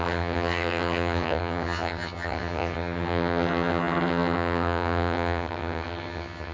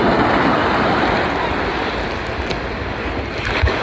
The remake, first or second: first